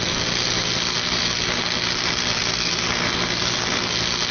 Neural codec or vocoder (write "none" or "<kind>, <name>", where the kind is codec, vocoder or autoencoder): none